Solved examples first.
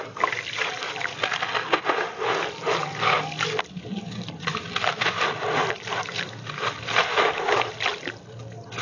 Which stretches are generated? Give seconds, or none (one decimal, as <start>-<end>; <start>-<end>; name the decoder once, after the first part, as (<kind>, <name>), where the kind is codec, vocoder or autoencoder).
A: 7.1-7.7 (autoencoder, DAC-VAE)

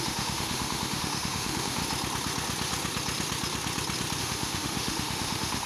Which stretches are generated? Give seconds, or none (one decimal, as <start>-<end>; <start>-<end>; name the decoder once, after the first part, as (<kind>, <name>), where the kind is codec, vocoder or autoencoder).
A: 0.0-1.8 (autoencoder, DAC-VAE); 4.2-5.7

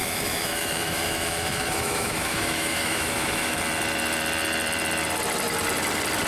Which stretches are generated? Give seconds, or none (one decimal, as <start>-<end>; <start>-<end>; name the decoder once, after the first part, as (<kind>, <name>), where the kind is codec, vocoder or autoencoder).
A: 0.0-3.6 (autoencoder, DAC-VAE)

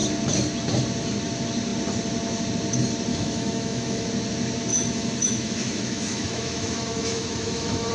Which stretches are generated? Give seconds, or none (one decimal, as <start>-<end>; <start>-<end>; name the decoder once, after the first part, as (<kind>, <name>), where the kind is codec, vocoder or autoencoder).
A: 3.1-4.1 (autoencoder, DAC-VAE); 4.7-7.9

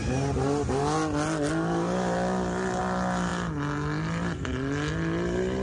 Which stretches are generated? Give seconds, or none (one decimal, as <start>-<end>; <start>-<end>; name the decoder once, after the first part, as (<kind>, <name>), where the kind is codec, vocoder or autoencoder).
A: none